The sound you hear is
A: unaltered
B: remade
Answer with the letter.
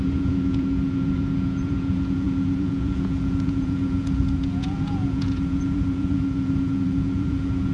B